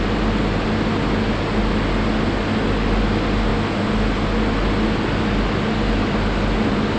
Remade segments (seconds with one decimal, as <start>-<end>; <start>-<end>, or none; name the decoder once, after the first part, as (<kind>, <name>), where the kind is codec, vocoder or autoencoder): none